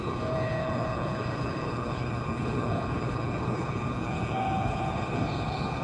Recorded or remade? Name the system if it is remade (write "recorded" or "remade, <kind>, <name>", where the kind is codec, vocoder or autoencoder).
remade, codec, HILCodec